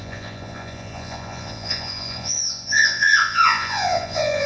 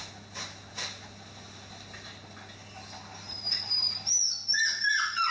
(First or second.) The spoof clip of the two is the first